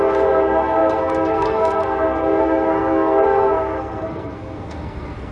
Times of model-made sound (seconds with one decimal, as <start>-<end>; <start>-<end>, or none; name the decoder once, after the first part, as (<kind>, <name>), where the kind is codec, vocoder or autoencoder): 0.0-5.3 (codec, SNAC)